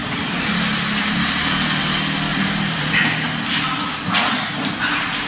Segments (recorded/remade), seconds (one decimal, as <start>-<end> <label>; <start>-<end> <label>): 0.0-2.3 recorded; 2.3-3.5 remade; 3.5-5.3 recorded